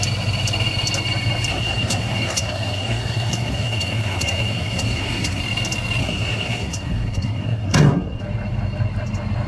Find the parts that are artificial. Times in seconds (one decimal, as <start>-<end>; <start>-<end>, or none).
1.5-5.4; 6.0-8.2